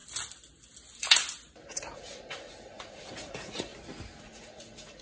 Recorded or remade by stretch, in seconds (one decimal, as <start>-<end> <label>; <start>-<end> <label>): 0.0-1.7 recorded; 1.7-3.7 remade; 3.7-4.2 recorded; 4.2-5.0 remade